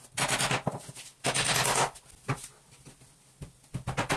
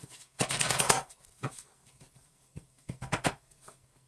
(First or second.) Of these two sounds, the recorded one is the first